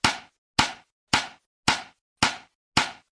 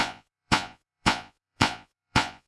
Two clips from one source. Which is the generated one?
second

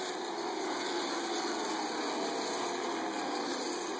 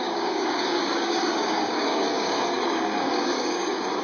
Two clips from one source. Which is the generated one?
second